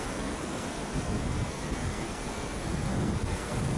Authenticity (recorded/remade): remade